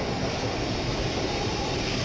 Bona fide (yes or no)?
yes